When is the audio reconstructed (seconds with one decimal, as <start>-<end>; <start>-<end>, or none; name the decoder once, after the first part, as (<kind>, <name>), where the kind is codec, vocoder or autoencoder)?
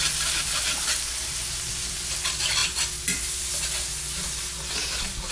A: none